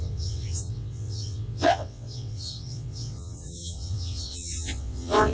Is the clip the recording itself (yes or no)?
no